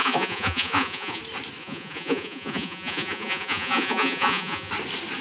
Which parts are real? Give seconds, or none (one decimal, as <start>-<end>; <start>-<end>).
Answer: 1.2-1.6; 4.7-5.2